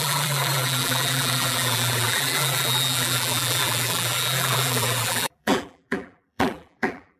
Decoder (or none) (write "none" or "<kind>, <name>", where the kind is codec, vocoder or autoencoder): vocoder, BigVGAN v2